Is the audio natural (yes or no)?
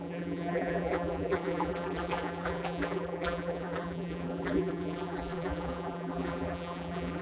no